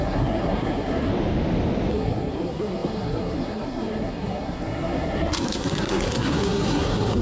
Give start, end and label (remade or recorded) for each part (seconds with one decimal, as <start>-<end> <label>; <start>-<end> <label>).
0.0-1.1 remade; 1.1-1.9 recorded; 1.9-7.2 remade